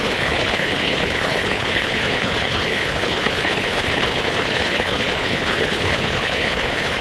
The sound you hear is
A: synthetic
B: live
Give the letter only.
A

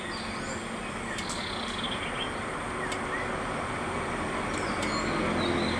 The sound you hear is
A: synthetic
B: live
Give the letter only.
B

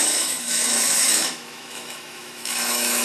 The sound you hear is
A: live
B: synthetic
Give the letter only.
B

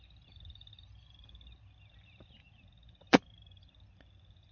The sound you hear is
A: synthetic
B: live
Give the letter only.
B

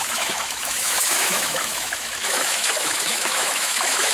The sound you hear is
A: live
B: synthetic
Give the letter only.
B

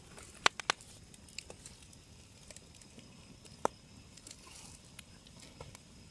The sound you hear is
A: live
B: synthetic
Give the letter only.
A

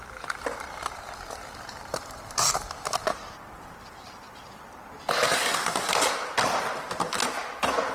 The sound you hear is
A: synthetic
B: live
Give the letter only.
B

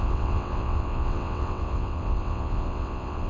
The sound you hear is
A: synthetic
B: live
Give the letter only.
A